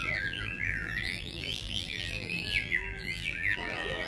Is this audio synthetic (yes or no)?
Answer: yes